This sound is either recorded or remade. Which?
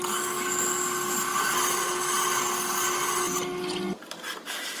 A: recorded